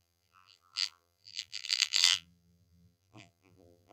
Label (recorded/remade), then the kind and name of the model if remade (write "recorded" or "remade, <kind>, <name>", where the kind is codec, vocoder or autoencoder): remade, vocoder, BigVGAN v2